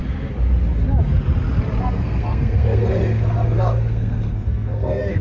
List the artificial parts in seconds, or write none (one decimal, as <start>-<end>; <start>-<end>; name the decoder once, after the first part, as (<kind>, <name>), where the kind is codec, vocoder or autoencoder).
1.8-5.2 (codec, SNAC)